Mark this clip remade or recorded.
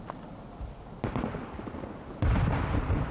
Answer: recorded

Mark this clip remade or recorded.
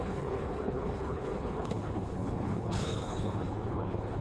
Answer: remade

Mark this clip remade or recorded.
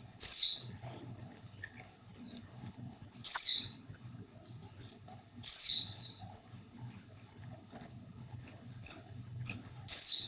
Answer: remade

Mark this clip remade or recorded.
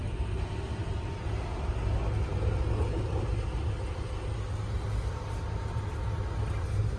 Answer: recorded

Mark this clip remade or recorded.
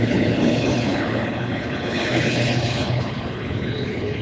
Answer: remade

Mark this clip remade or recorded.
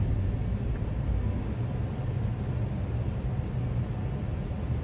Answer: recorded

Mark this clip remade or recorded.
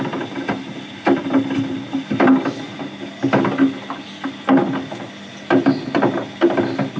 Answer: recorded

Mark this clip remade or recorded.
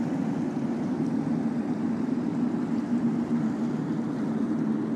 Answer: recorded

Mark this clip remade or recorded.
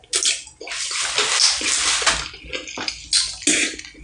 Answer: recorded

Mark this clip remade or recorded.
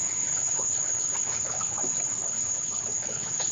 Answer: remade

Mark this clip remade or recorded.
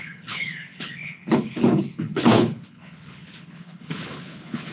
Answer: remade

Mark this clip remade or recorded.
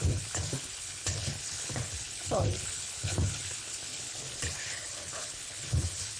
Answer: remade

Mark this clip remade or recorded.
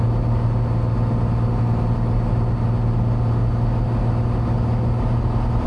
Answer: recorded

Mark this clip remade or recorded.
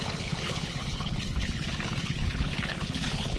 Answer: remade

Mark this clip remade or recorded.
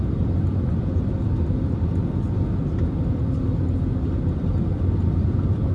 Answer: recorded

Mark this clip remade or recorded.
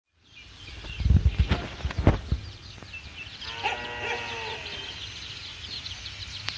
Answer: recorded